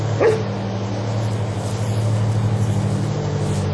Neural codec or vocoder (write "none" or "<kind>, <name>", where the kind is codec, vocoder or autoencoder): none